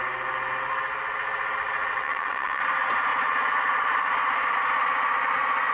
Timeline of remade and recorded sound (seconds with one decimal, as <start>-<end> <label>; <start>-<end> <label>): 0.0-1.9 recorded; 1.9-2.6 remade; 2.6-5.7 recorded